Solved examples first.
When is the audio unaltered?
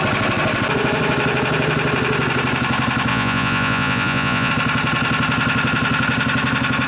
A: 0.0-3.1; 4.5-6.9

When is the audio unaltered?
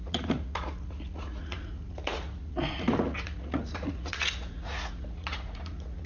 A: none